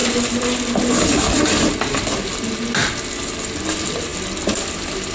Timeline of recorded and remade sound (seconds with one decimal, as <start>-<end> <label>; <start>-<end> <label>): 0.0-5.1 recorded